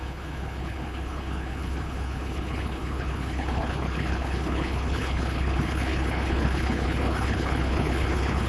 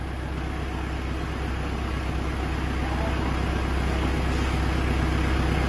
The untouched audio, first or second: second